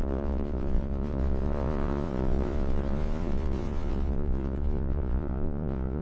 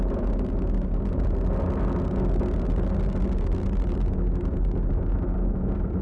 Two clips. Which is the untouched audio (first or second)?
second